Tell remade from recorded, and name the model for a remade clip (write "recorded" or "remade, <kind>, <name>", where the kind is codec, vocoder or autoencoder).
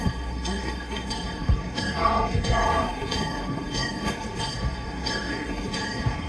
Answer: remade, codec, SNAC